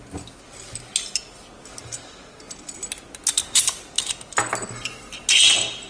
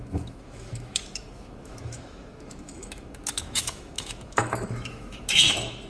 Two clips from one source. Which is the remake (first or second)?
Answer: second